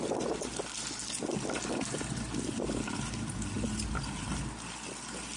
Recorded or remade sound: recorded